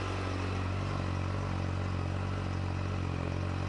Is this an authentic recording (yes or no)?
yes